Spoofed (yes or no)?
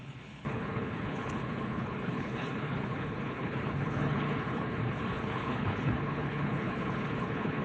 yes